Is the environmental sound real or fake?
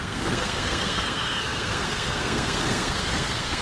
fake